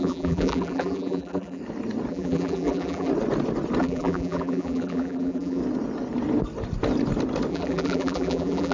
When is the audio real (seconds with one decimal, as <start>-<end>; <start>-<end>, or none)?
1.6-2.1; 3.1-3.8; 5.6-7.5